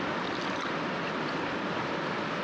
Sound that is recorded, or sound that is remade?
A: remade